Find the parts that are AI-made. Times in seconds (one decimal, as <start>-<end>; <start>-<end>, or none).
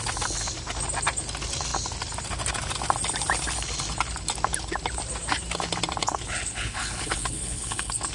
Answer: 6.0-8.1